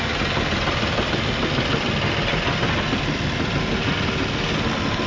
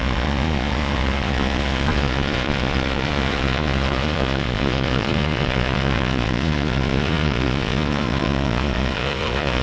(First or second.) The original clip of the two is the first